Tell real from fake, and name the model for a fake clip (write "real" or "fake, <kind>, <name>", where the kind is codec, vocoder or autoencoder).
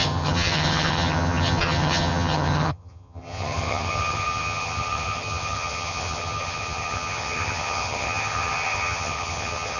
fake, vocoder, HiFi-GAN